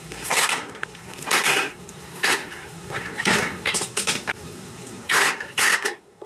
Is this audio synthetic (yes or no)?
yes